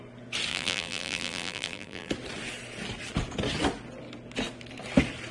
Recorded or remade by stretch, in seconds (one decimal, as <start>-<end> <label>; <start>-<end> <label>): 0.0-0.5 recorded; 0.5-2.1 remade; 2.1-5.3 recorded